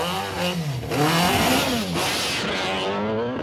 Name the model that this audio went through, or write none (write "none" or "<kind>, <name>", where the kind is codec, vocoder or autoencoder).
none